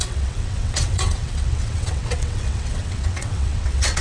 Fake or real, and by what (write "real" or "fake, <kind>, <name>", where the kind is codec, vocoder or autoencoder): fake, vocoder, WaveNeXt